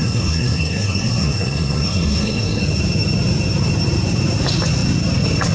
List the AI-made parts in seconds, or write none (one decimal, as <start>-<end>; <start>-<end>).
0.0-2.6